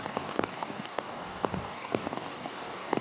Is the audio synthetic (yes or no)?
yes